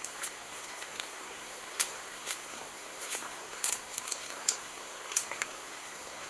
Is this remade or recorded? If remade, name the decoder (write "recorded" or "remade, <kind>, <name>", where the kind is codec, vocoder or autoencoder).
remade, codec, SNAC